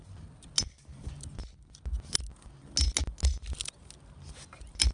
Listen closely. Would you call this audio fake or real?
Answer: real